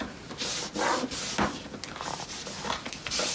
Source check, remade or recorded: recorded